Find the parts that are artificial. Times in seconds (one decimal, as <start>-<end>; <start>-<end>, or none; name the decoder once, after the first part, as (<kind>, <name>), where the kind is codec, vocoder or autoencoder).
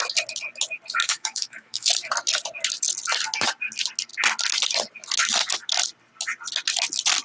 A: 1.0-1.9 (autoencoder, DAC-VAE)